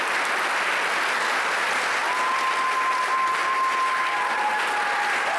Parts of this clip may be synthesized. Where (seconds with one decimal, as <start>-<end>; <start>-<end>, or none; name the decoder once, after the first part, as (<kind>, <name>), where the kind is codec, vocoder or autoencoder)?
none